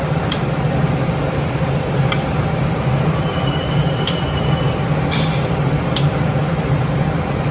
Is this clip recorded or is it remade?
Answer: remade